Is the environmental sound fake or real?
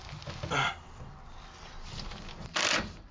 real